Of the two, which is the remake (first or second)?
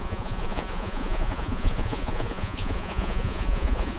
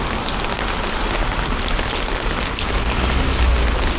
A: first